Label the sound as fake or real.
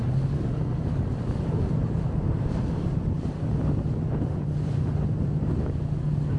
fake